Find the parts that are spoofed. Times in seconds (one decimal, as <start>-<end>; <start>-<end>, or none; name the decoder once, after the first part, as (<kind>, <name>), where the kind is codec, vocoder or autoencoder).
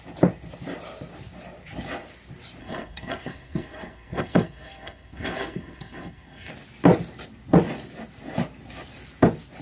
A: 2.6-6.5 (codec, SNAC)